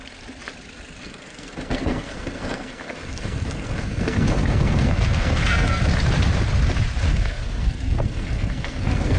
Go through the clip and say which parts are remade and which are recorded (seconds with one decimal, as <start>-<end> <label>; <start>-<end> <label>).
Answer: 0.0-1.0 recorded; 1.0-5.8 remade; 5.8-7.0 recorded; 7.0-9.2 remade